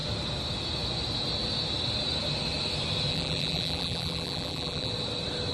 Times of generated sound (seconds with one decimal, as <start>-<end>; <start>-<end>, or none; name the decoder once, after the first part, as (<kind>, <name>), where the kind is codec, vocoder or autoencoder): 3.1-4.9 (vocoder, BigVGAN v2)